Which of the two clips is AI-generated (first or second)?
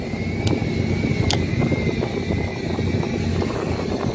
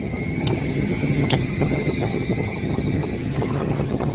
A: second